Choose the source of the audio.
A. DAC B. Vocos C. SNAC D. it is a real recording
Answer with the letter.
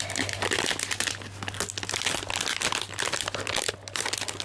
D